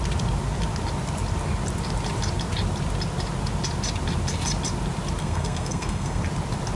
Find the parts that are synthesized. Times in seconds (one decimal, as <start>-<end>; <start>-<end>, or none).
5.2-6.2